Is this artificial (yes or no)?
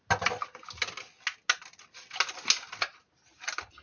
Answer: no